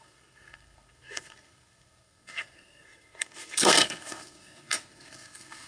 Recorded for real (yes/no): no